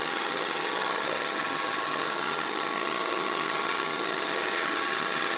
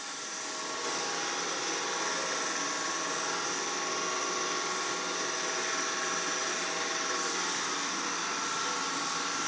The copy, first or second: first